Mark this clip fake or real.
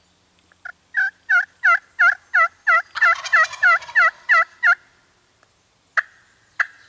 real